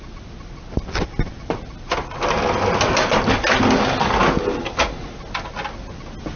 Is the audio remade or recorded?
recorded